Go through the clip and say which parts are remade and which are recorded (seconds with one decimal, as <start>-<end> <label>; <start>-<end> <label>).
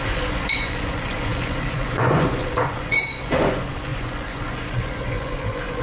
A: 0.0-5.8 remade